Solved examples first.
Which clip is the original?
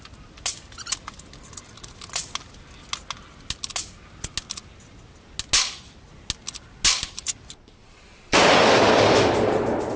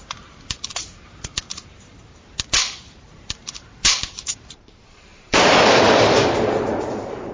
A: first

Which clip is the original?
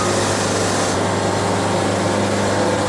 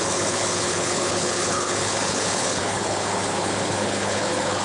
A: first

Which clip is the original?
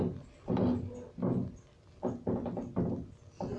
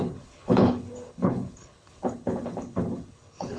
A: first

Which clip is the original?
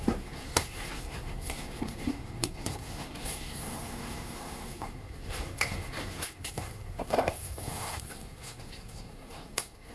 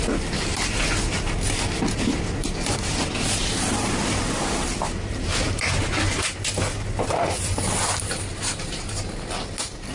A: second